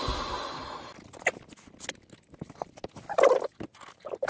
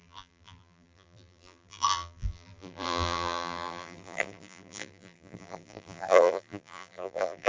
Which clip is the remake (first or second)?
second